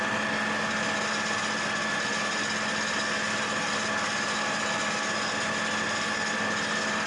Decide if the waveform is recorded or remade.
recorded